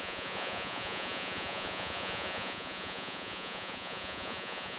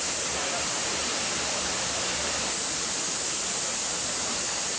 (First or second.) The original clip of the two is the second